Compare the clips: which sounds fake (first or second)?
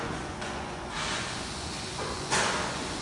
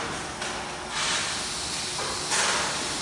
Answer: first